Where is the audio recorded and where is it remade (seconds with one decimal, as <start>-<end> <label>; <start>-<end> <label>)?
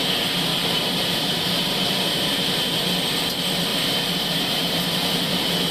0.0-0.5 recorded; 0.5-2.9 remade; 2.9-3.7 recorded; 3.7-4.8 remade; 4.8-5.7 recorded